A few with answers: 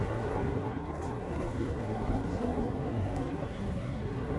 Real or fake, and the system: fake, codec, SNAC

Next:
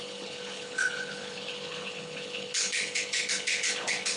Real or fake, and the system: fake, codec, HILCodec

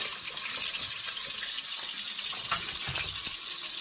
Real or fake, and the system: real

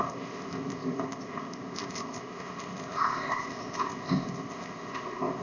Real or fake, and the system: fake, codec, ZipCodec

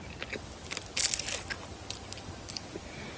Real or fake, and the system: real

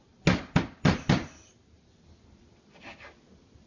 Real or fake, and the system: real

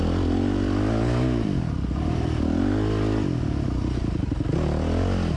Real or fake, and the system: real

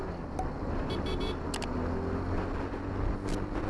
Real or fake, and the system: real